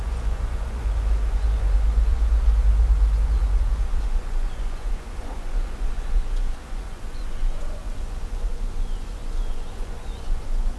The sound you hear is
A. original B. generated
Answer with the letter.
B